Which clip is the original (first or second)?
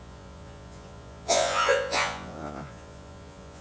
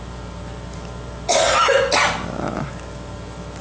second